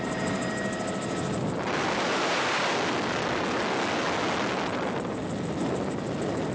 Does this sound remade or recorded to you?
recorded